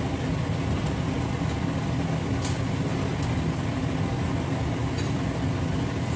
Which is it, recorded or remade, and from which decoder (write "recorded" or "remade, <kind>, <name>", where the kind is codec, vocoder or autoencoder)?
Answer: recorded